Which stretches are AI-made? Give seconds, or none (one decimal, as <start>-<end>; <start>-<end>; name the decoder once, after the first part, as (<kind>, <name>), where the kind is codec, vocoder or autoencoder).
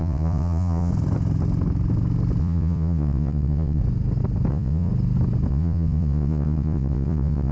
0.0-0.9 (vocoder, Vocos); 2.4-3.8; 4.5-4.9; 5.5-7.5